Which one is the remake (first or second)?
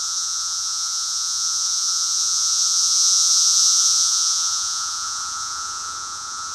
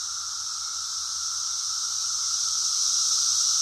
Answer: first